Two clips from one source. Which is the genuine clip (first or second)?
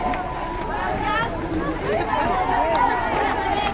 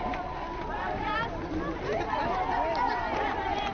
first